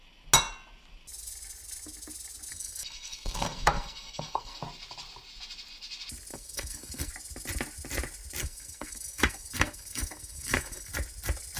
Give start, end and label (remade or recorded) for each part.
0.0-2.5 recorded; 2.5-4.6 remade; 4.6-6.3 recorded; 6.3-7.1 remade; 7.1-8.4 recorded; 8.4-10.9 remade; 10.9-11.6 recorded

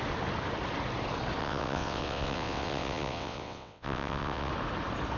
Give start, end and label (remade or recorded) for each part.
0.0-1.4 recorded; 1.4-4.5 remade; 4.5-5.2 recorded

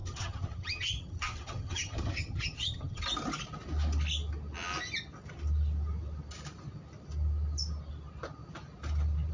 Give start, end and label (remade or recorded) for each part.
0.0-3.0 remade; 3.0-9.3 recorded

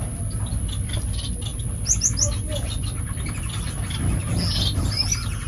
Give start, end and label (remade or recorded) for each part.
0.0-5.5 recorded

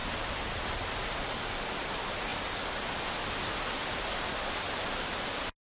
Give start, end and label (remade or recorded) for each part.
0.0-5.6 recorded

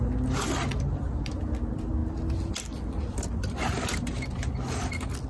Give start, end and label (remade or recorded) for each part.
0.0-5.3 recorded